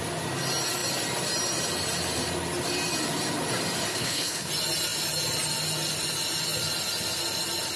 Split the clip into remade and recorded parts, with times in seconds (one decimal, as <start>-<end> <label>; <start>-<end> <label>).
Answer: 0.0-3.9 recorded; 3.9-4.5 remade; 4.5-7.8 recorded